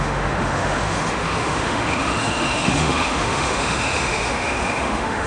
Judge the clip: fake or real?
fake